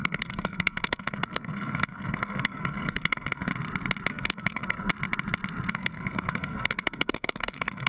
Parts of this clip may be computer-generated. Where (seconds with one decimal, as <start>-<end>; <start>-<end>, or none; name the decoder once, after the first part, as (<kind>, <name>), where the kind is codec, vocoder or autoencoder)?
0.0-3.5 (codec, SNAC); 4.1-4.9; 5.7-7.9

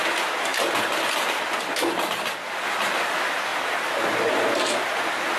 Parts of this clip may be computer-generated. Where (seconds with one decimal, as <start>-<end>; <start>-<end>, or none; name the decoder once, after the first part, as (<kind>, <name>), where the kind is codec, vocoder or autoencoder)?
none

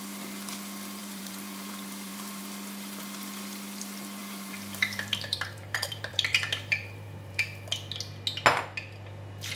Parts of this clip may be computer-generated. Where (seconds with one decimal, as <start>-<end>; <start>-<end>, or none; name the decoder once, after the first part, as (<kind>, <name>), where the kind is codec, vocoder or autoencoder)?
1.0-2.4 (vocoder, BigVGAN v2); 4.2-7.4

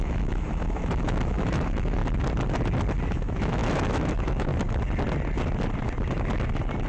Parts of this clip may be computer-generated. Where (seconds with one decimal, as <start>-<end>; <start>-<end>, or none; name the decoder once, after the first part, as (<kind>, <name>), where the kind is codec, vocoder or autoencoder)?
0.0-2.0 (autoencoder, DAC-VAE); 3.1-4.5